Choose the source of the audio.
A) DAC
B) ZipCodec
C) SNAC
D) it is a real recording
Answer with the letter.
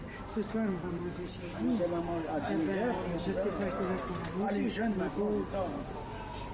D